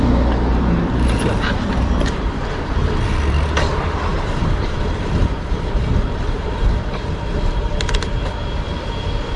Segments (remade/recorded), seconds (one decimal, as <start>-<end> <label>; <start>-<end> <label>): 0.0-0.5 recorded; 0.5-2.8 remade; 2.8-4.1 recorded; 4.1-7.7 remade; 7.7-9.4 recorded